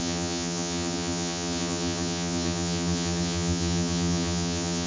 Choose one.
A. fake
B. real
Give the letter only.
A